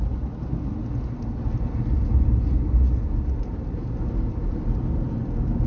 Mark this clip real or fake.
real